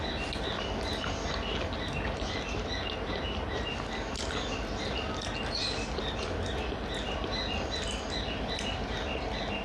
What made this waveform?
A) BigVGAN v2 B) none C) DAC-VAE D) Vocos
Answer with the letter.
B